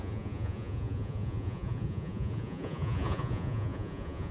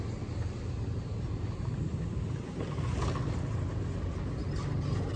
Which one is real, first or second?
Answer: second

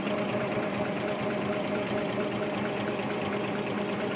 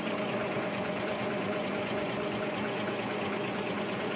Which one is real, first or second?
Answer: first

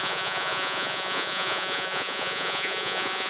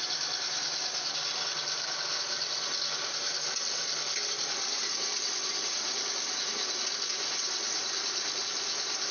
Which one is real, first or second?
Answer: second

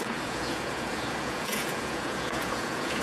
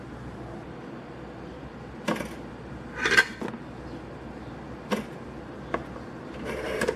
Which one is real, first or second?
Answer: second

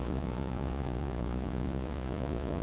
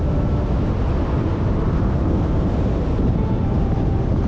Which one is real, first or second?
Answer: second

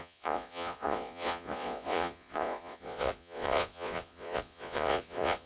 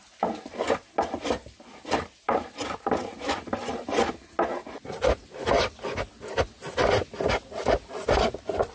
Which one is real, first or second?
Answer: second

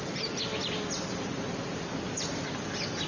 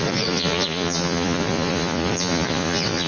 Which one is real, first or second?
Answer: first